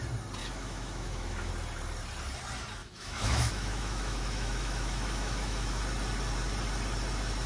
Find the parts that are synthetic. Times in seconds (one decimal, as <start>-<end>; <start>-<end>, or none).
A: 0.4-1.5; 2.8-5.8